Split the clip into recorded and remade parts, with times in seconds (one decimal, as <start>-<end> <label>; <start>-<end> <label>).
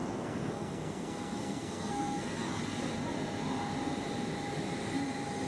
0.0-2.6 remade; 2.6-5.5 recorded